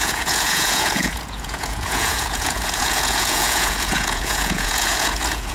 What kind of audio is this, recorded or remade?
remade